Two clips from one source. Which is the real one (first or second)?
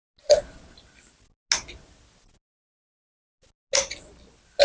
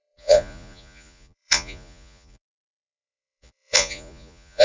first